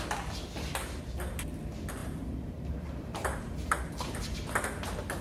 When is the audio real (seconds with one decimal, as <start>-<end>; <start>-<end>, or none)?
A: 0.0-2.0; 4.2-5.2